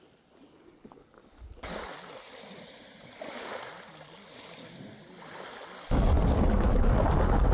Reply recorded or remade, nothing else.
recorded